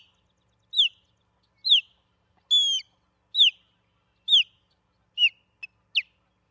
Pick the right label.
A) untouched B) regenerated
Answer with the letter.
A